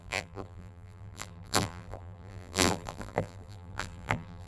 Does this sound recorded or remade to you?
remade